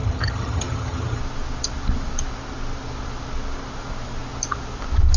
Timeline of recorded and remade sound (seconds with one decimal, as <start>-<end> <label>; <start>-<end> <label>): 0.0-1.2 remade; 1.2-5.2 recorded